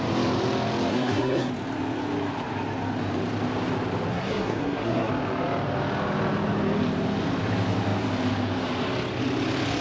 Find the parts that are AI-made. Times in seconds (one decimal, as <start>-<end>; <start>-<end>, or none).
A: 0.9-1.5; 4.1-5.1